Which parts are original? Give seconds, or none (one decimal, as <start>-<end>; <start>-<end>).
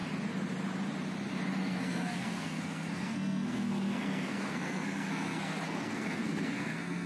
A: 0.0-1.6